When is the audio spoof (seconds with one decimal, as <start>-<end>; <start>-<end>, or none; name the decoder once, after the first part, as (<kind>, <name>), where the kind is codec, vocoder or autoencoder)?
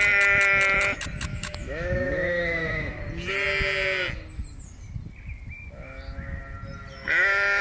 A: 1.3-3.0 (autoencoder, DAC-VAE)